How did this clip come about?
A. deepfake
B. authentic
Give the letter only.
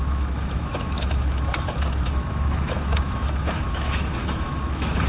A